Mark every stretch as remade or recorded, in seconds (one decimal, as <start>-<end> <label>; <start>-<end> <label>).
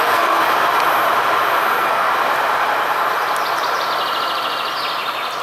0.0-0.4 remade; 0.4-1.5 recorded; 1.5-2.1 remade; 2.1-5.4 recorded